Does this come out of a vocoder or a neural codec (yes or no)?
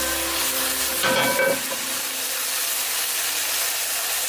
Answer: no